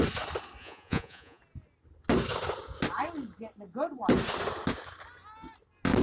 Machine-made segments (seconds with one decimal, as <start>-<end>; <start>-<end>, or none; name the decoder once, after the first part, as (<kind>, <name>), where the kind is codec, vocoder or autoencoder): 0.6-1.4 (vocoder, Vocos)